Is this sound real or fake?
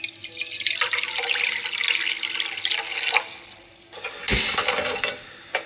real